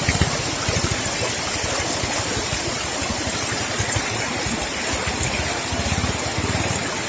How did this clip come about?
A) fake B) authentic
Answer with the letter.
A